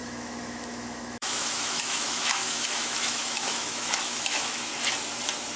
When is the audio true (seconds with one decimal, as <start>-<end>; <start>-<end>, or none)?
4.7-5.6